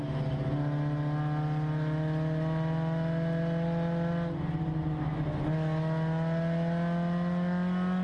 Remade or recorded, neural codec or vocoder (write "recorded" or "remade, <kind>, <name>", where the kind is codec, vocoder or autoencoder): recorded